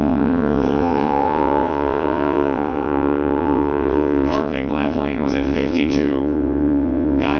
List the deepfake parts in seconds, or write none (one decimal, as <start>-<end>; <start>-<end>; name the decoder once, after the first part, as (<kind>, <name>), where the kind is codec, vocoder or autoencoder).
0.0-7.4 (vocoder, WaveNeXt)